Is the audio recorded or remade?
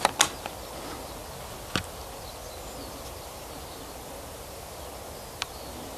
recorded